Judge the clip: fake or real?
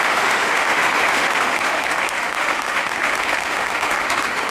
fake